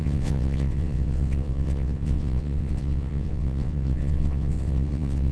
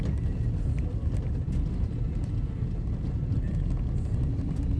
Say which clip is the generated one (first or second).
first